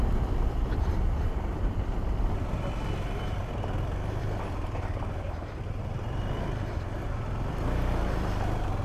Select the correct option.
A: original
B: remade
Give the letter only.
B